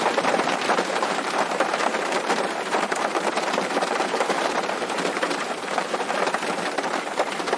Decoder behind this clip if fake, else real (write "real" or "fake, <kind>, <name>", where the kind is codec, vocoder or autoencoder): fake, vocoder, BigVGAN v2